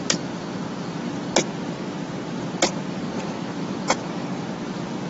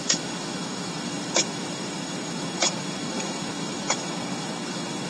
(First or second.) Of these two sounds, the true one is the first